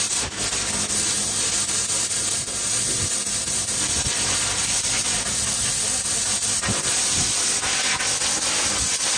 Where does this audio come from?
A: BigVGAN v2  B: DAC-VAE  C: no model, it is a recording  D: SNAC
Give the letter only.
C